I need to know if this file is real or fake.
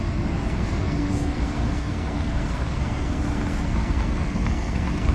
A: fake